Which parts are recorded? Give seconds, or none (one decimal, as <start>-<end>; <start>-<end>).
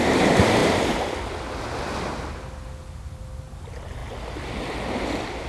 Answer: 0.0-5.5